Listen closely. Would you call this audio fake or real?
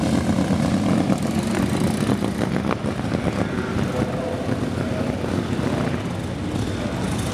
real